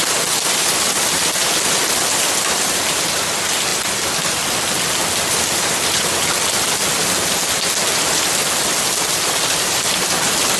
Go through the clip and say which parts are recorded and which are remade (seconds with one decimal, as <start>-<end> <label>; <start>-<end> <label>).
0.0-10.6 recorded